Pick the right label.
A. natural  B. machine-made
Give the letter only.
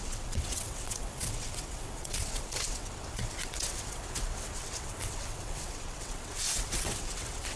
B